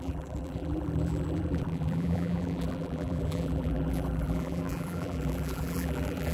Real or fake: fake